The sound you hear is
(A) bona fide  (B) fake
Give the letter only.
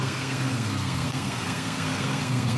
B